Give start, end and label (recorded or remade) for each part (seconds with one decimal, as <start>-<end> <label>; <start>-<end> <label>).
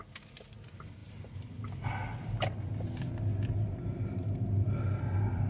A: 0.0-5.5 recorded